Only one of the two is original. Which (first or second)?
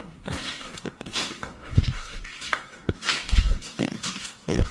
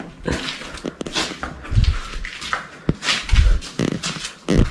second